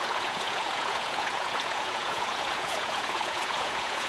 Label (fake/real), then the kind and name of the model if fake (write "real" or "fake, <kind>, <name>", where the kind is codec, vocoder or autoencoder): fake, vocoder, Vocos